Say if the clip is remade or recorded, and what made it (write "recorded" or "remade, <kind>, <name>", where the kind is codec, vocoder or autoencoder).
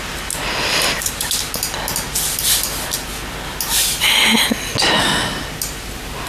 recorded